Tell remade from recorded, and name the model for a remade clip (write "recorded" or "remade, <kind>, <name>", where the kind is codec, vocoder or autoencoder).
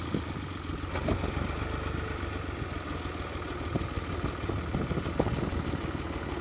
recorded